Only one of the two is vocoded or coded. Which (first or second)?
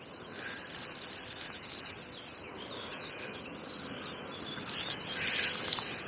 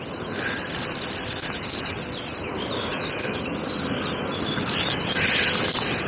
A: second